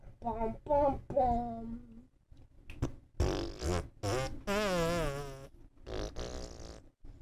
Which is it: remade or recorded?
recorded